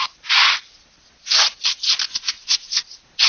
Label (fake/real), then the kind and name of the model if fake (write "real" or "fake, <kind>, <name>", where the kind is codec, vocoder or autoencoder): real